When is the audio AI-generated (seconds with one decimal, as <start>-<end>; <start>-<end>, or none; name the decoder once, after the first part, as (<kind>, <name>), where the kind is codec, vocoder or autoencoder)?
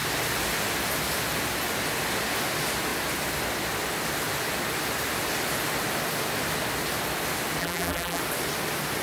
7.6-8.2 (vocoder, BigVGAN v2)